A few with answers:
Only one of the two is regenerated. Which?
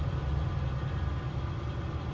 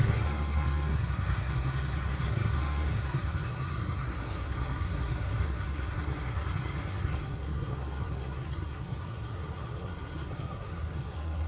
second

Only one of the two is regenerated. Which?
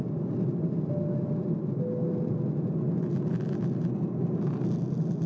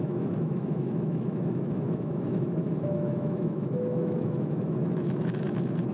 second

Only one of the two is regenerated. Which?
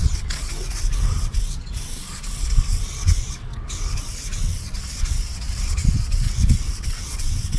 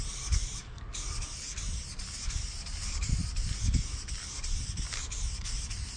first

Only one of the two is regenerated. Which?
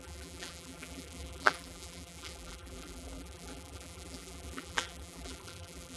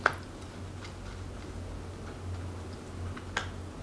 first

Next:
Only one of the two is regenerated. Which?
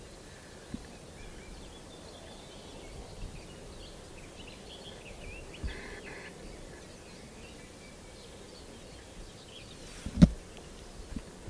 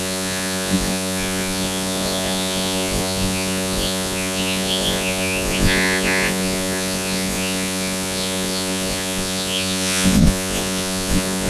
second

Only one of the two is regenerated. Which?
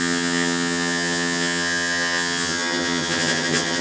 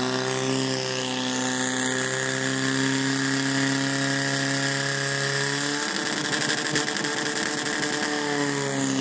first